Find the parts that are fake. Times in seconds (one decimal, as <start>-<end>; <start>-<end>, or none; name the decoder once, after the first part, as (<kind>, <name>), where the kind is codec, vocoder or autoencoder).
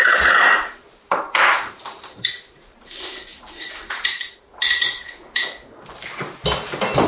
0.8-2.3 (vocoder, BigVGAN v2); 3.3-4.4